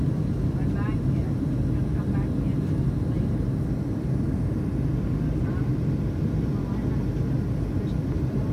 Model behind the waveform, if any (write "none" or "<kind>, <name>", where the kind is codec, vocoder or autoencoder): none